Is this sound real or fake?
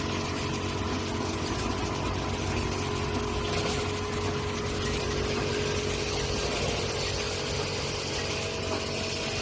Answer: real